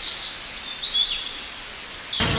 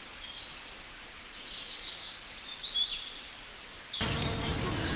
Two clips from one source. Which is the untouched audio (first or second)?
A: first